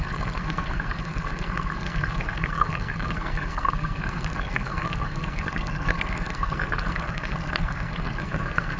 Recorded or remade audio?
remade